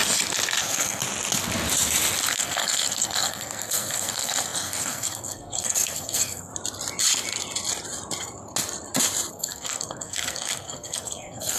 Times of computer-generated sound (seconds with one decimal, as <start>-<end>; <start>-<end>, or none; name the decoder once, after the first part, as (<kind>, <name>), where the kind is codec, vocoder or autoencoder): 0.6-1.0 (codec, SNAC); 2.3-6.5; 9.3-11.6